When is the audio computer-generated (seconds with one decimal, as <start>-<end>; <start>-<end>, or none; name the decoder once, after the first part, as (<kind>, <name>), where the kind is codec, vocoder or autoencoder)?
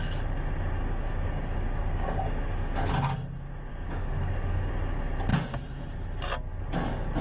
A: 0.8-2.9 (codec, DAC); 3.7-4.7